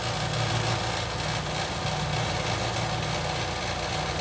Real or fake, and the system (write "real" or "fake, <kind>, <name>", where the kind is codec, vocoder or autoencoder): real